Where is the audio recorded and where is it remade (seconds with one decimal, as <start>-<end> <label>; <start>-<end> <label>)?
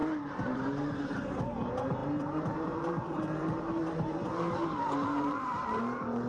0.0-1.4 remade; 1.4-2.0 recorded; 2.0-5.8 remade; 5.8-6.3 recorded